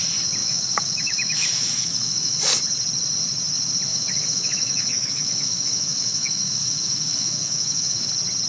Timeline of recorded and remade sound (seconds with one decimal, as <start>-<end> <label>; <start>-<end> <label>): 0.0-0.4 recorded; 0.4-2.4 remade; 2.4-3.9 recorded; 3.9-8.1 remade; 8.1-8.5 recorded